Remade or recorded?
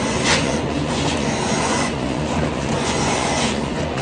remade